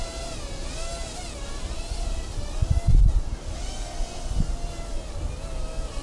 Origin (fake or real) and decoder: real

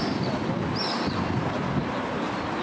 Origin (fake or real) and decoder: real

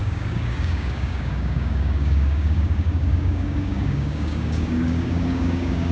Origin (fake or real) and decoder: fake, codec, DAC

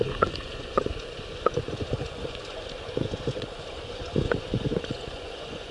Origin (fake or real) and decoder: fake, vocoder, Vocos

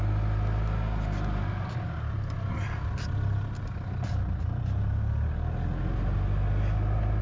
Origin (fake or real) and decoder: real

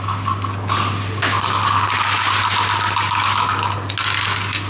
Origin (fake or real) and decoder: real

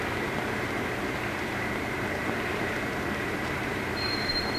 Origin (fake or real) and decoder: fake, vocoder, BigVGAN v2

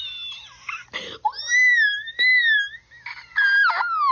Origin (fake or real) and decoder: real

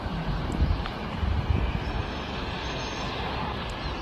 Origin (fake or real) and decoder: fake, vocoder, BigVGAN v2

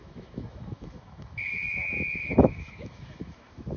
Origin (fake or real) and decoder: fake, autoencoder, DAC-VAE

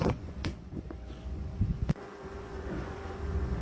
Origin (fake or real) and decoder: fake, vocoder, Vocos